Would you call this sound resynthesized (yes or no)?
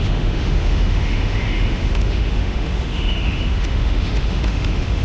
yes